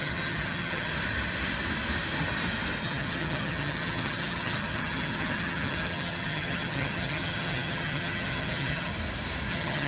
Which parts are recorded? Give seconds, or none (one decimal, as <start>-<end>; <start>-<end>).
0.9-2.8; 8.9-9.5

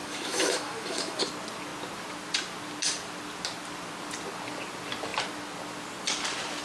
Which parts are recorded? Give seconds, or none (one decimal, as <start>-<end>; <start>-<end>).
1.2-6.6

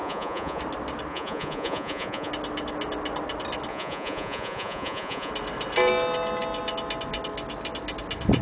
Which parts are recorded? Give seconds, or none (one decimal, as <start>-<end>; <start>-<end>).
0.6-1.1; 2.3-3.7; 5.3-8.4

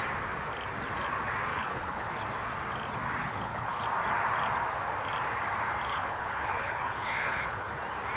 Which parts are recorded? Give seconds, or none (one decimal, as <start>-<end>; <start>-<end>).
0.0-1.5; 2.1-3.2; 3.8-5.9; 7.7-8.2

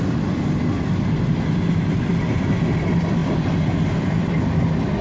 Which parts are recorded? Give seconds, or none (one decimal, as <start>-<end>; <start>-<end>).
0.0-5.0

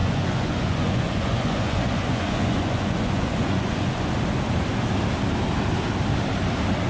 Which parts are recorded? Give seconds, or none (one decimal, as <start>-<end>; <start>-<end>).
4.1-6.9